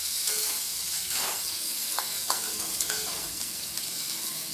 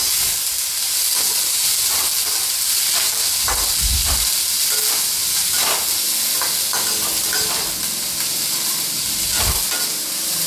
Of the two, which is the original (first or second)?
second